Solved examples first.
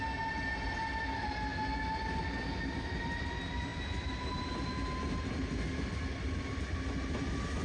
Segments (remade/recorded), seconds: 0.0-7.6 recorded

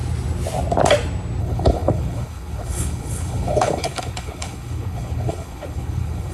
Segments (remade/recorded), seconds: 0.0-1.4 recorded; 1.4-6.3 remade

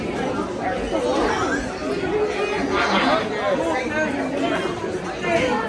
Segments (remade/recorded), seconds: 0.0-5.7 recorded

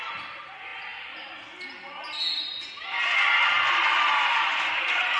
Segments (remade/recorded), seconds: 0.0-5.2 recorded

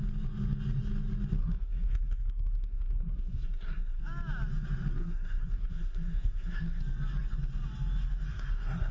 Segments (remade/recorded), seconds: 0.0-1.4 recorded; 1.4-4.0 remade; 4.0-5.0 recorded; 5.0-6.8 remade; 6.8-8.3 recorded; 8.3-8.9 remade

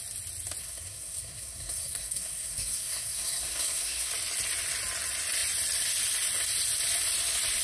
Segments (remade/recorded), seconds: 0.0-0.6 recorded; 0.6-4.1 remade; 4.1-7.6 recorded